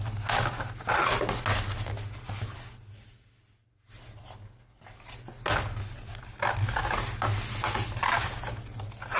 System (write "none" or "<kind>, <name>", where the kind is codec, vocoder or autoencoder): none